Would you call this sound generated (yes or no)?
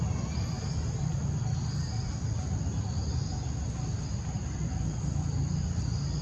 no